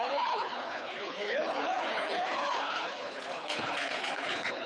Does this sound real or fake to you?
fake